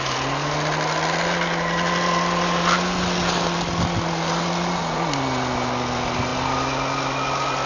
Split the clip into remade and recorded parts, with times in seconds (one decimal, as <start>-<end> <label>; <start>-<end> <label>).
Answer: 0.0-7.7 recorded